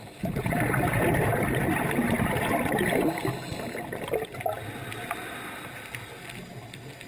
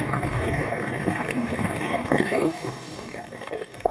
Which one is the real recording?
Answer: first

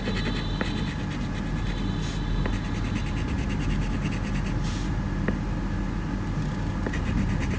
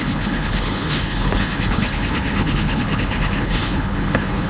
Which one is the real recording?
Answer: first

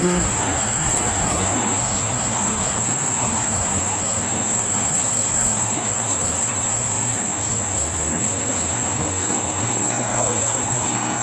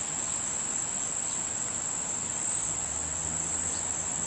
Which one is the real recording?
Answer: second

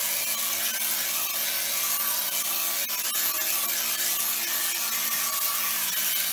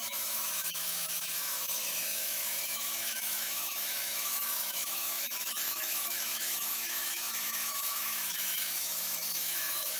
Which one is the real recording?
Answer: first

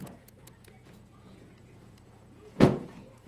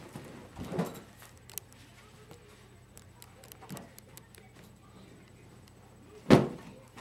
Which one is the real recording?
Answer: second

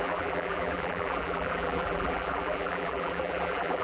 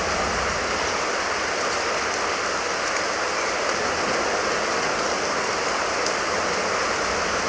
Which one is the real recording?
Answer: second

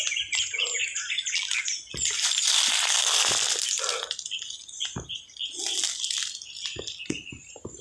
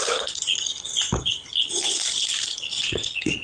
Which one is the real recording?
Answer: first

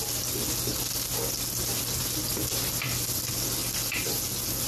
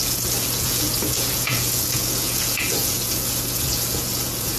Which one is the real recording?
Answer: first